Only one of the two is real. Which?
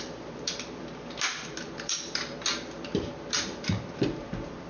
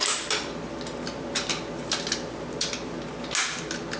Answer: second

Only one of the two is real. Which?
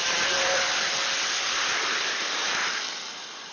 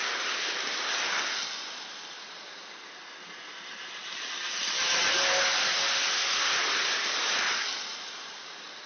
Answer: second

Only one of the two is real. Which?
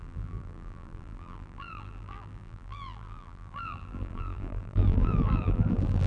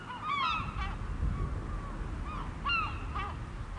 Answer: second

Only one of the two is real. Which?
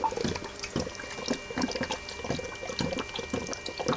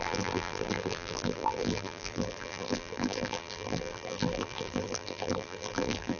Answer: first